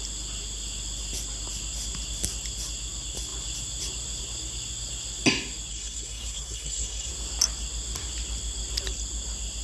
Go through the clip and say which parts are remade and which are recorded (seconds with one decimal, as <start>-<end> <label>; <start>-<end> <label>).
0.0-5.7 recorded; 5.7-7.1 remade; 7.1-9.6 recorded